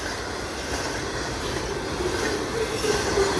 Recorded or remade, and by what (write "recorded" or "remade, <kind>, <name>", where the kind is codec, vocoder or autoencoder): recorded